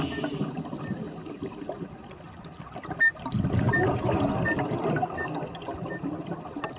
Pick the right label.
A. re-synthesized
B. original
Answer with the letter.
B